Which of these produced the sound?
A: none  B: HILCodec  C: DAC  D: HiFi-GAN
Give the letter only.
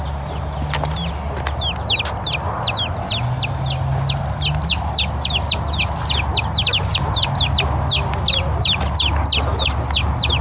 A